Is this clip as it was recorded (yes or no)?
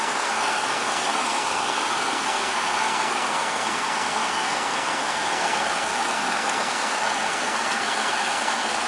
no